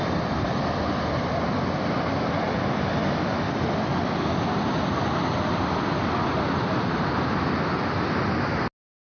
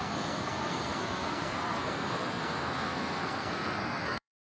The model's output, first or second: second